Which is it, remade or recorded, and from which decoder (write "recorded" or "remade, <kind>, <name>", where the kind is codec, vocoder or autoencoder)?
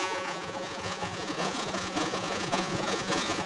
remade, vocoder, Vocos